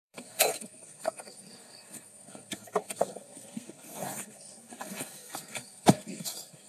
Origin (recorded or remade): remade